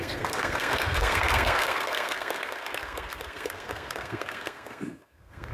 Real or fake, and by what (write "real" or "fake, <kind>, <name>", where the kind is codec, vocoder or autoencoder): fake, codec, SNAC